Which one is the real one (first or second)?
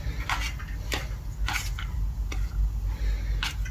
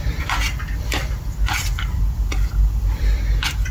first